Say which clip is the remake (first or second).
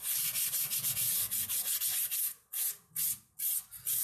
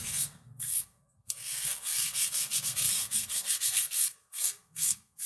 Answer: second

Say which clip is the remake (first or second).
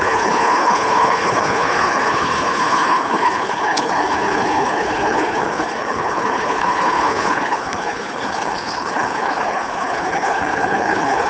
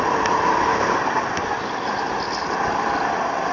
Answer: first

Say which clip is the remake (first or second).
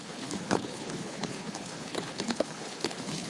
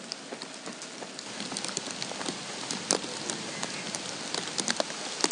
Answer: first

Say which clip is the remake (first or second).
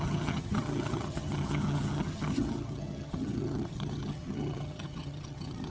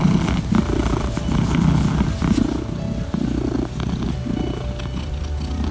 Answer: first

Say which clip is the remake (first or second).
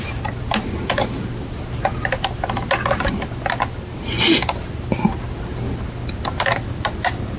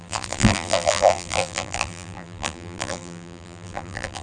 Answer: second